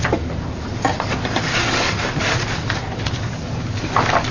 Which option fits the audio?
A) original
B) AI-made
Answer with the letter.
A